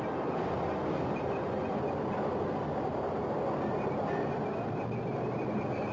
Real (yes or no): yes